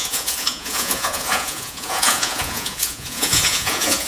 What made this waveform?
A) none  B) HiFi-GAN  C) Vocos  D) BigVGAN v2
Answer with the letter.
C